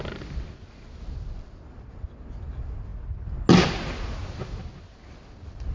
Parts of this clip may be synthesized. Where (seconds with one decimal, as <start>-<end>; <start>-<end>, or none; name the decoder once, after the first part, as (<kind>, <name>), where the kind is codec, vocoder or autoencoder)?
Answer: none

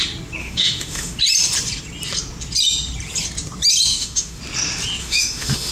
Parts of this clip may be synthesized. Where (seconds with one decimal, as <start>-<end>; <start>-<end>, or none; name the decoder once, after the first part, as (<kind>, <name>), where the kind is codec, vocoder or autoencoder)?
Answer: 0.4-1.2 (autoencoder, DAC-VAE); 3.9-4.4; 5.0-5.7

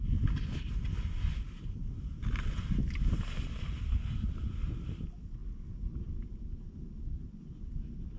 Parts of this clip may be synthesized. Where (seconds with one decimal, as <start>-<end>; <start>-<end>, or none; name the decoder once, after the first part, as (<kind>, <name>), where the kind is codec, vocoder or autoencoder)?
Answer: none

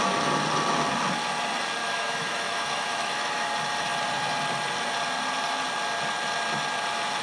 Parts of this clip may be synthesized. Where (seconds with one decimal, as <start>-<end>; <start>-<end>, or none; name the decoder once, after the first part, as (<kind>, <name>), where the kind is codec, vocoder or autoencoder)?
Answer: 1.8-3.5 (autoencoder, DAC-VAE)